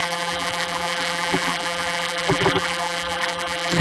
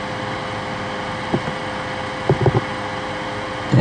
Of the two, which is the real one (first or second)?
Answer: second